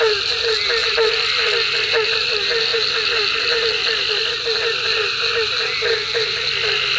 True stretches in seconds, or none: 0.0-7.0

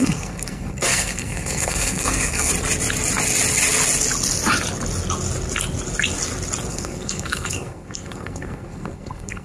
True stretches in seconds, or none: 2.5-6.7

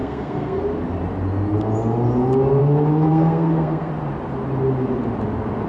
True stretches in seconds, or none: 0.6-3.1; 3.9-5.7

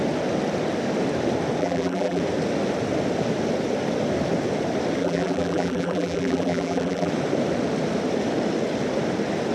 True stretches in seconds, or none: 0.0-1.6; 2.2-5.0; 7.1-9.5

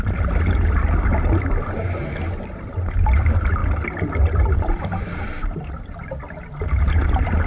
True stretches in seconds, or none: 0.0-7.5

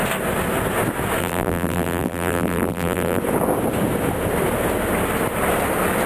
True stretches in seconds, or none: 0.0-1.2; 3.2-6.1